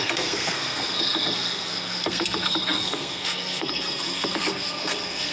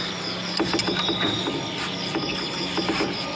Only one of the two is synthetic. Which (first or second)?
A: first